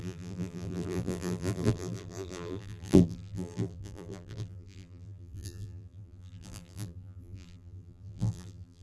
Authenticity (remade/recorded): remade